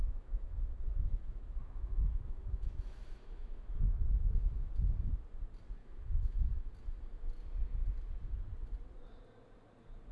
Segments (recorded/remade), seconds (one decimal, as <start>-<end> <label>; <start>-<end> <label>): 0.0-4.7 remade; 4.7-5.8 recorded; 5.8-6.7 remade; 6.7-10.1 recorded